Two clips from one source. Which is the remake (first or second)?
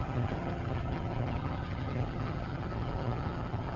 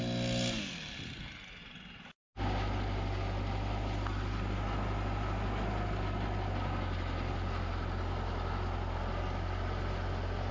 first